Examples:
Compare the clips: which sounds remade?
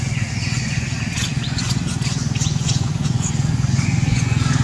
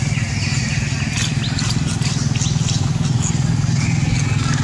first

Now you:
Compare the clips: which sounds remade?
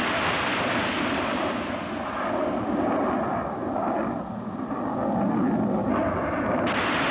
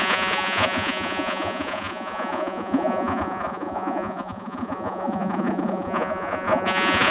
second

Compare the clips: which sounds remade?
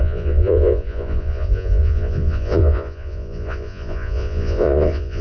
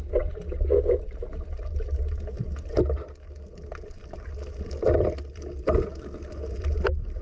first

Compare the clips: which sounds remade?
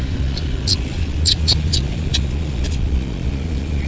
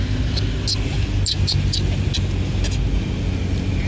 first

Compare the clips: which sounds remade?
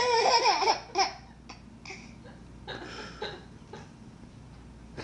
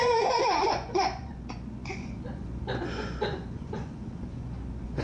second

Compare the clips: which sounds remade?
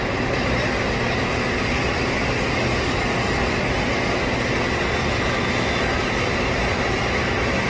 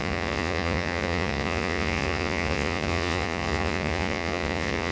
second